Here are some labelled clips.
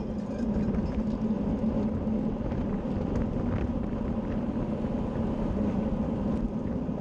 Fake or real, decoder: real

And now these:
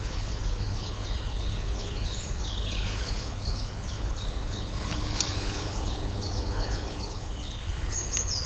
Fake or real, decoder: fake, codec, HILCodec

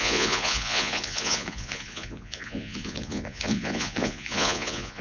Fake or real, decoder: fake, vocoder, Vocos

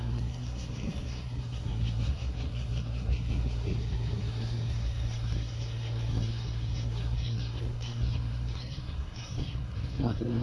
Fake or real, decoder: fake, codec, SNAC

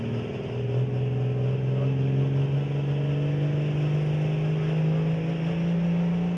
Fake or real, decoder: real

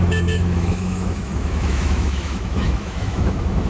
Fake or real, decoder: fake, autoencoder, DAC-VAE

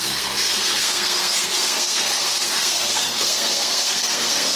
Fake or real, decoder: fake, codec, SNAC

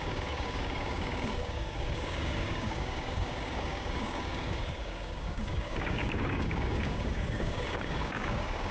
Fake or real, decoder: fake, codec, DAC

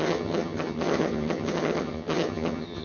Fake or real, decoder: fake, vocoder, HiFi-GAN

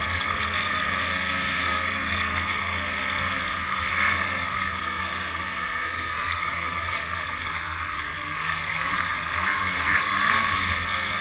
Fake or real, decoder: fake, codec, SNAC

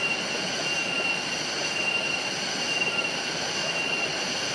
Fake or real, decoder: real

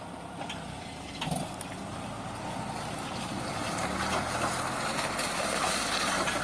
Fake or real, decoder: real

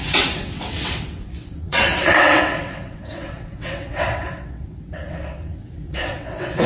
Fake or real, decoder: fake, vocoder, WaveNeXt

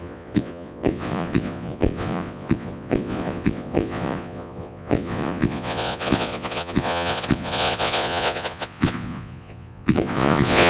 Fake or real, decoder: fake, vocoder, Vocos